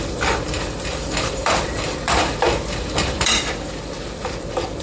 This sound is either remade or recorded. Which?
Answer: remade